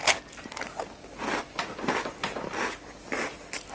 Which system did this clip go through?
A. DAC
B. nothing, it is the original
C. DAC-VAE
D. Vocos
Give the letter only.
B